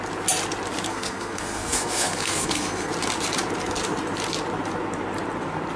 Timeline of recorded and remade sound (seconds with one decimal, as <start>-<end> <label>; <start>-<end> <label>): 0.0-0.9 recorded; 0.9-2.9 remade; 2.9-5.8 recorded